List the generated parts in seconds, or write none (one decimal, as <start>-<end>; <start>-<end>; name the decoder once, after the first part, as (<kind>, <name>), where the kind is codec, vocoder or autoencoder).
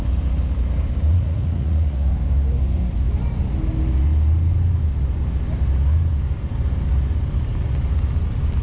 1.1-2.1 (vocoder, Vocos)